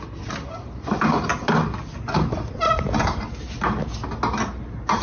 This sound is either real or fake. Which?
real